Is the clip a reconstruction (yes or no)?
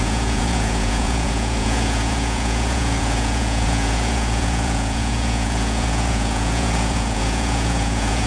yes